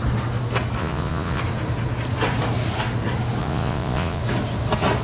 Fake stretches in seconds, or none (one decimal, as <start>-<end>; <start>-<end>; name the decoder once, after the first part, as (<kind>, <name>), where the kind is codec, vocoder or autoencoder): 0.8-1.4 (vocoder, Vocos); 3.4-4.2